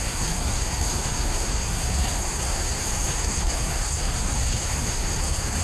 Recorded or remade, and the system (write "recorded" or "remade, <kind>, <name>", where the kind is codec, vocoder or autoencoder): remade, codec, SNAC